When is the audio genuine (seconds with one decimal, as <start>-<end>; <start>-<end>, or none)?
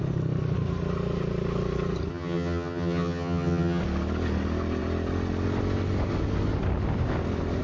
0.0-2.1; 3.8-7.6